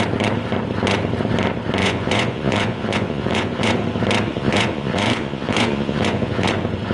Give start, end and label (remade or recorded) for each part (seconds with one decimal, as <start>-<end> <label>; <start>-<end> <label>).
0.0-1.8 recorded; 1.8-3.7 remade; 3.7-4.3 recorded; 4.3-6.5 remade; 6.5-6.9 recorded